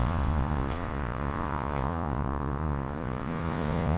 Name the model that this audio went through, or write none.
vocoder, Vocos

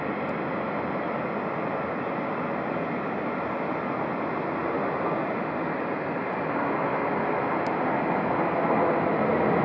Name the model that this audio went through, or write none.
none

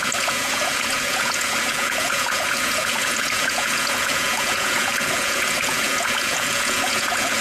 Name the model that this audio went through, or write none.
vocoder, Vocos